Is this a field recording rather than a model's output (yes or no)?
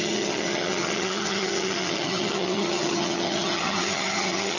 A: no